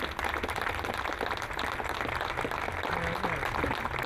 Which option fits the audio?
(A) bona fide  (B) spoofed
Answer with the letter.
A